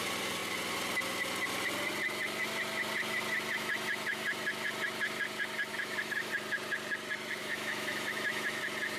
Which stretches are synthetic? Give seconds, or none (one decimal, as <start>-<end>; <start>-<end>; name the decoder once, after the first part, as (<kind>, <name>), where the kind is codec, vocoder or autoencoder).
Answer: 5.7-6.3 (autoencoder, DAC-VAE); 7.4-8.6